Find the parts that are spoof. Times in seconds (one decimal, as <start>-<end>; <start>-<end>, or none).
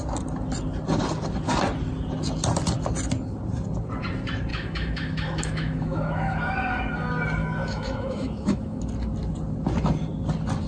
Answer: 4.5-6.5; 7.4-8.8